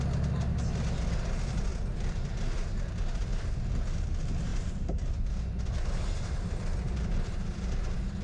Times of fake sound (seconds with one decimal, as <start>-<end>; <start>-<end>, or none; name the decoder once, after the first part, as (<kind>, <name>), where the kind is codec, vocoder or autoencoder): 4.5-5.3 (vocoder, BigVGAN v2)